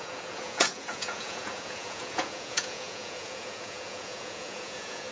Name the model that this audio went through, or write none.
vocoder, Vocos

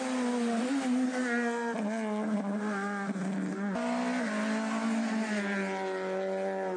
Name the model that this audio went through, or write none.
none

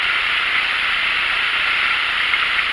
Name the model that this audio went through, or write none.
none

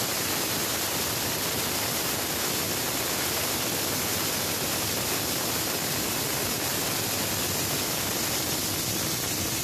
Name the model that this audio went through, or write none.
none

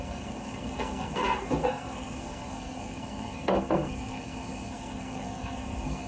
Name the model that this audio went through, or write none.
codec, SNAC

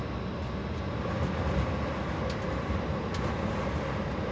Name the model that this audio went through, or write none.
none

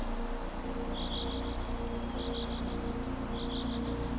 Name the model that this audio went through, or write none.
none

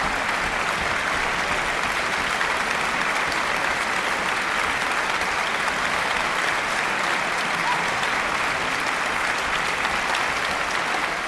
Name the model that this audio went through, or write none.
none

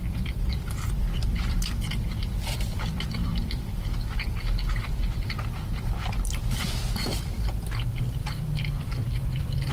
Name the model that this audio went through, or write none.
vocoder, BigVGAN v2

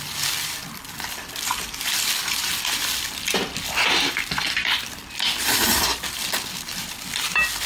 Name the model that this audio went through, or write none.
vocoder, BigVGAN v2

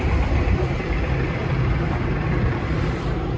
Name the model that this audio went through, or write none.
none